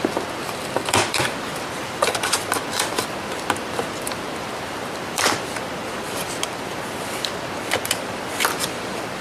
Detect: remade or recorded remade